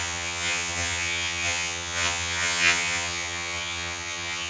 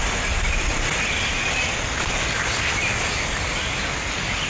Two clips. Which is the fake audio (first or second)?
first